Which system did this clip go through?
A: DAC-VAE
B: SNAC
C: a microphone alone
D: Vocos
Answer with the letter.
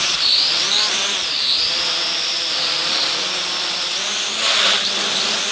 C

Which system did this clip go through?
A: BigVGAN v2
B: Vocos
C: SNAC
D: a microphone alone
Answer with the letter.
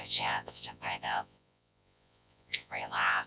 B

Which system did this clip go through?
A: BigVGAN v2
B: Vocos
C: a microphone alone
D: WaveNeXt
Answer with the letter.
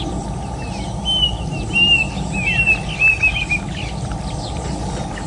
C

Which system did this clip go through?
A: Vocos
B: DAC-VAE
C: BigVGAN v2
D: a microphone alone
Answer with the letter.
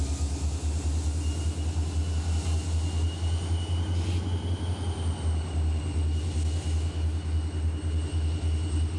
D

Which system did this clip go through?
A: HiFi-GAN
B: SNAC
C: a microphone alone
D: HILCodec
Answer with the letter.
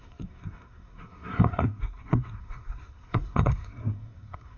B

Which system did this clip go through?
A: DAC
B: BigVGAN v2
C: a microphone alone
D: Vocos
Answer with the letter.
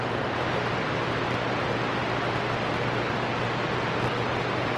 C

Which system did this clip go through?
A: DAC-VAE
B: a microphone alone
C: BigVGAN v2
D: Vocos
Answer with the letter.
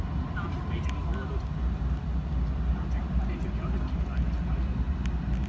B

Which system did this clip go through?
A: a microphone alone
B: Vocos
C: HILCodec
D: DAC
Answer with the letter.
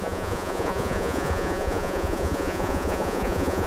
B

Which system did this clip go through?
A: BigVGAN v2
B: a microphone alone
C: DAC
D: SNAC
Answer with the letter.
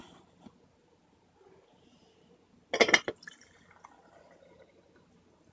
B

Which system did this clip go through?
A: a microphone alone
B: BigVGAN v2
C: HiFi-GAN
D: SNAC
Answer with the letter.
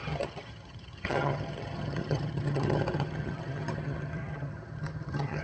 C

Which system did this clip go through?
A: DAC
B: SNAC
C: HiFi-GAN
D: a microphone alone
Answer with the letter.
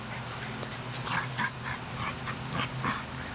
D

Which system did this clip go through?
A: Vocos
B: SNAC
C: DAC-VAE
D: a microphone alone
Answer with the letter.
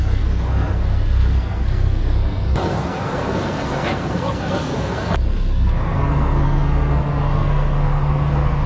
B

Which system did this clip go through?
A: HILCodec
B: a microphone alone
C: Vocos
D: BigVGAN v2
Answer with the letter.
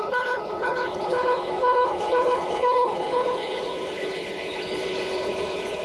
A